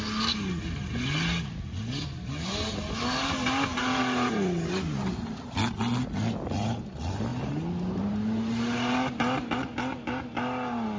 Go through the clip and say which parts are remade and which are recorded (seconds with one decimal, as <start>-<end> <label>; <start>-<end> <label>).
0.0-11.0 recorded